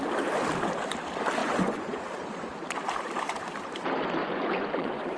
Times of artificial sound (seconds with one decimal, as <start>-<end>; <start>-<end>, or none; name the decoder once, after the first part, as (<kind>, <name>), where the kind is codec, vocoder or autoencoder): 1.4-2.0 (vocoder, Vocos); 4.2-5.2